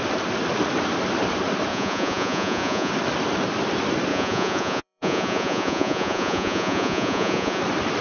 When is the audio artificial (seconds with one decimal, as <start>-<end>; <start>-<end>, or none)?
1.7-2.9; 4.1-7.6